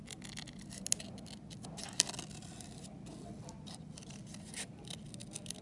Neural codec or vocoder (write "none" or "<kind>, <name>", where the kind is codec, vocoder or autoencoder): none